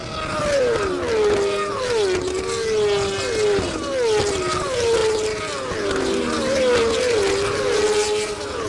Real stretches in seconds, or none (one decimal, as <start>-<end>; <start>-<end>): 0.0-8.7